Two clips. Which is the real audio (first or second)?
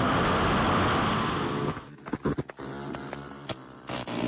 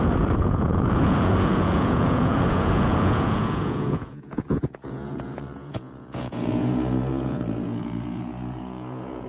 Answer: first